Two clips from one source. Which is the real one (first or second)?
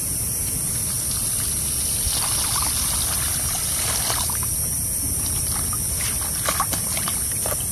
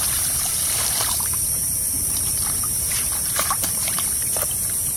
first